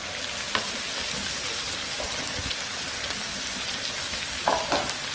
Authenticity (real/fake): real